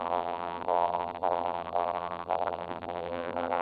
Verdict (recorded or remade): remade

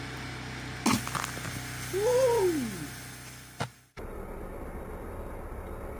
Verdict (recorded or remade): recorded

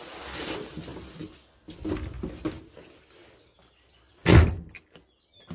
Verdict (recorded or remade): recorded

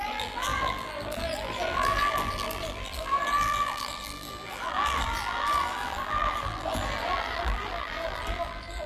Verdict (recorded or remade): remade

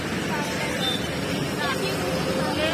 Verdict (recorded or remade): recorded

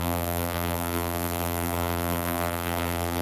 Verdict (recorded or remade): remade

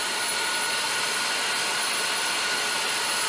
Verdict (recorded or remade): recorded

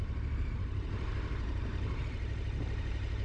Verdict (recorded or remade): remade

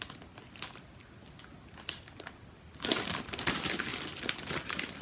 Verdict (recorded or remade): recorded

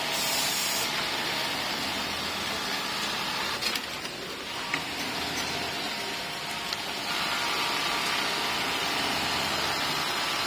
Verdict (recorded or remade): recorded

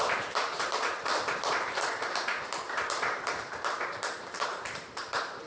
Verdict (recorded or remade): remade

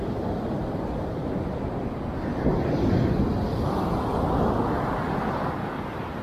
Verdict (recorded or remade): recorded